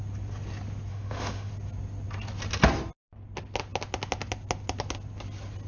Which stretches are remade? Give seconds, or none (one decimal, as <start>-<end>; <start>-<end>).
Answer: 0.9-1.5